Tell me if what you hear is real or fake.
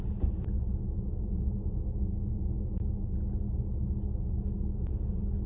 real